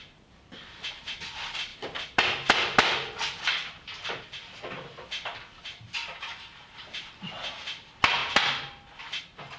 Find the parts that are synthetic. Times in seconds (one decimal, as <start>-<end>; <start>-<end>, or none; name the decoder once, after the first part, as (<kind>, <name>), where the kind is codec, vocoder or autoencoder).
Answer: 6.0-7.1 (vocoder, BigVGAN v2)